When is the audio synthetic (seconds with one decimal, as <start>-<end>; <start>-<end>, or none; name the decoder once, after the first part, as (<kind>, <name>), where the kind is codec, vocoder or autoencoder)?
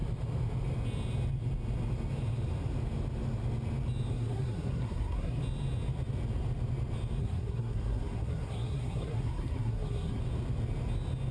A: 4.1-5.4 (codec, SNAC); 7.2-10.2